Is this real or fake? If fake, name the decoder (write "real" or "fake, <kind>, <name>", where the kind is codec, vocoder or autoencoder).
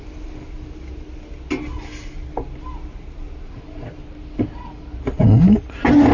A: real